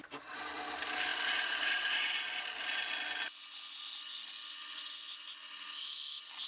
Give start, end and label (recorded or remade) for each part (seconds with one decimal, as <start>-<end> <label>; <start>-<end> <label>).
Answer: 0.0-6.5 recorded